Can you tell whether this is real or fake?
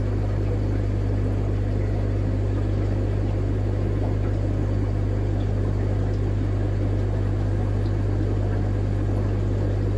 real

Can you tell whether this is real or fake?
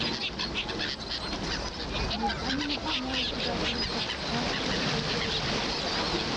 real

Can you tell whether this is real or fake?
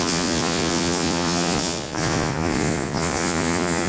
fake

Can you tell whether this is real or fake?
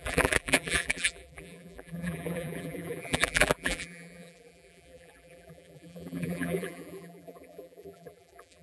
fake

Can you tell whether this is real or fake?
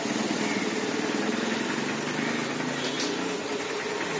real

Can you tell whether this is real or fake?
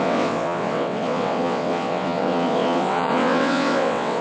fake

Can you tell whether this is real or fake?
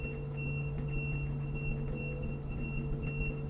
real